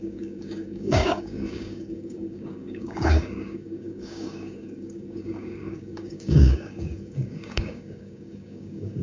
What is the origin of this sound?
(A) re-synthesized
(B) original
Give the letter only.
A